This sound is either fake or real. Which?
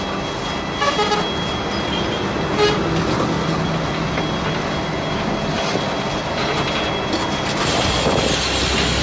real